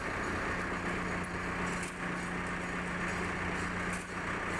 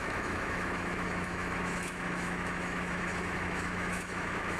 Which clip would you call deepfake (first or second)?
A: second